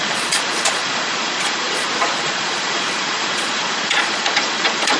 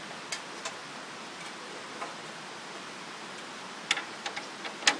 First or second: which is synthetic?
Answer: first